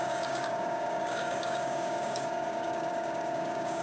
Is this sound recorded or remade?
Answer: remade